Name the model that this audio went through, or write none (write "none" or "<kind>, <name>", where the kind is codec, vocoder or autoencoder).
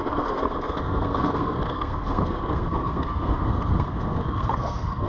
codec, SNAC